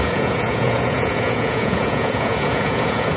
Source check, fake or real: fake